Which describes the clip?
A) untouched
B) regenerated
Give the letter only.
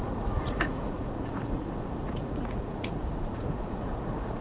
B